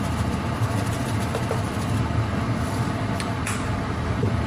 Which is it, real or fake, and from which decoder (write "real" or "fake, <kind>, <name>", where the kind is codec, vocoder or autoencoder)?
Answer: fake, vocoder, BigVGAN v2